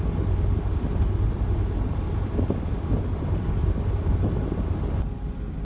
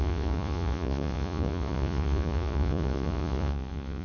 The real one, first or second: first